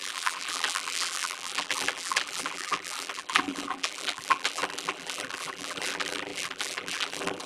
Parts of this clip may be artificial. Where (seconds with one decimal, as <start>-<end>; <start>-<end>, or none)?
0.0-7.5